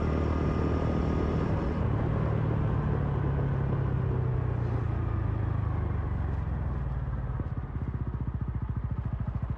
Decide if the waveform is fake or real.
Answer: real